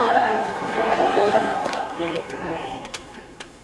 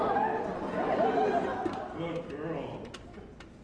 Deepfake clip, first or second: first